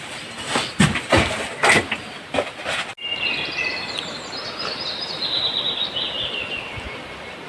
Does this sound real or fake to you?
real